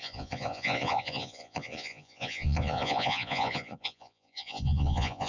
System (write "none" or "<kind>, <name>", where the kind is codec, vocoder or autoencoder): vocoder, Vocos